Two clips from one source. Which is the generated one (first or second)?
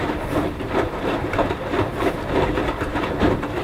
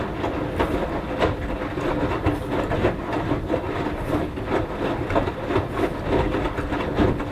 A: first